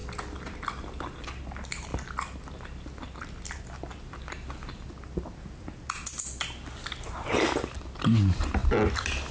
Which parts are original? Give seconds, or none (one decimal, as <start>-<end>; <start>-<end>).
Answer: 0.0-9.3